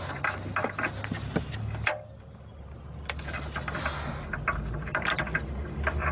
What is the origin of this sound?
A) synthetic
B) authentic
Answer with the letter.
B